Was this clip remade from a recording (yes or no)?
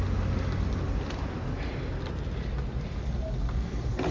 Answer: no